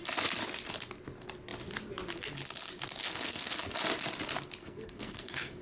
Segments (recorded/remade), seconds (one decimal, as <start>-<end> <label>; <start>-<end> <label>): 0.0-3.0 recorded; 3.0-3.6 remade; 3.6-4.6 recorded; 4.6-5.6 remade